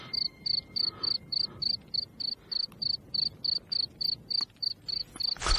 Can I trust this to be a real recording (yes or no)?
yes